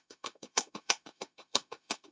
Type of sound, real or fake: fake